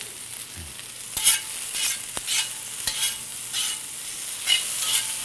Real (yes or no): yes